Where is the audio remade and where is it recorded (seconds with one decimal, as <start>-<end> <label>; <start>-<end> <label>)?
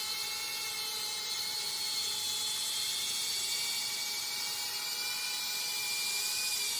0.0-6.8 remade